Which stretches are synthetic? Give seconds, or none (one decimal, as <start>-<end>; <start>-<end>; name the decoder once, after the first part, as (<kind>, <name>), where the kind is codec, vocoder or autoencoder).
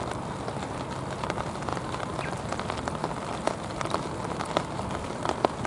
none